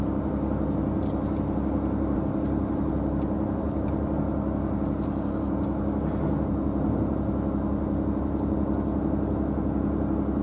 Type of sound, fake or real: real